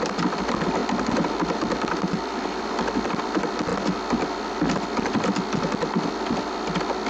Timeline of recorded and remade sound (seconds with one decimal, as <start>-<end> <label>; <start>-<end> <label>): 0.0-0.8 recorded; 0.8-3.2 remade; 3.2-7.1 recorded